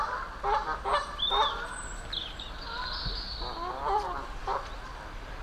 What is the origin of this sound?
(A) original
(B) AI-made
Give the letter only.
A